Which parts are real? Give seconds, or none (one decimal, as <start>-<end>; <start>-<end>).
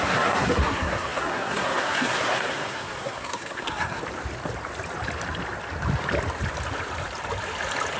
4.0-8.0